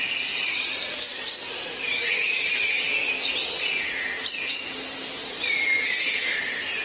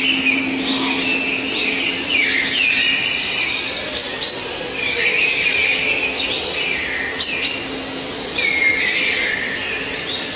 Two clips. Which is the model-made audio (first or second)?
first